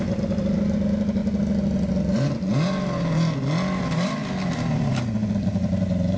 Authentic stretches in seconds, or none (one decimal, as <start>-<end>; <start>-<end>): 1.2-3.8